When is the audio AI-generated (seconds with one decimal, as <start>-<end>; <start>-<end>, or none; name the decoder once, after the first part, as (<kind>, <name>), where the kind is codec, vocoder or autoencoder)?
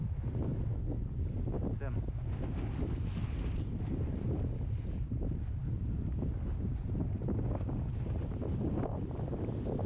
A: none